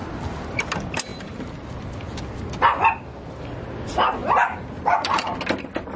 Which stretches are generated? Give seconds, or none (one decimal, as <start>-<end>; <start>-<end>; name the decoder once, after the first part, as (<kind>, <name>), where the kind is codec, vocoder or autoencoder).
1.1-1.7 (vocoder, BigVGAN v2); 4.2-5.4